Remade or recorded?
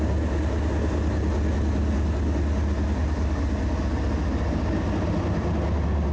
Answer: recorded